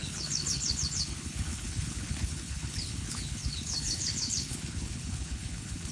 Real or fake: fake